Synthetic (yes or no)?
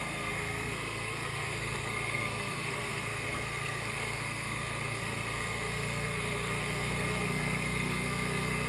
yes